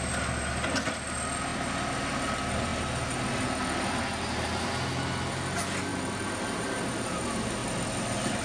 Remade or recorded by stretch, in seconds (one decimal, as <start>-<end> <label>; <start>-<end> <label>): 0.0-8.4 recorded